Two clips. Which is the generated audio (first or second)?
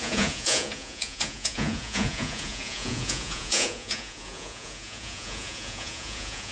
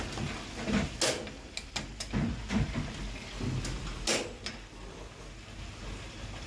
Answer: first